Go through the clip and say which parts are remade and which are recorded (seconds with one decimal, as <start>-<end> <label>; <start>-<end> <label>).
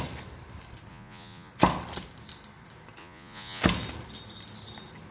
0.0-0.9 recorded; 0.9-1.5 remade; 1.5-3.0 recorded; 3.0-3.6 remade; 3.6-5.1 recorded